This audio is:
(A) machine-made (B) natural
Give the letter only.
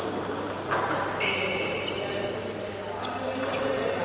B